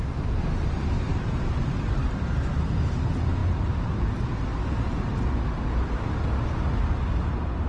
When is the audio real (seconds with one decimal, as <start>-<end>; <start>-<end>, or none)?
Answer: 0.0-1.1; 2.0-7.7